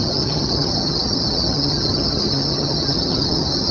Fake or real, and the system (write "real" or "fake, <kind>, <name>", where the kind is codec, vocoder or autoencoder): fake, vocoder, HiFi-GAN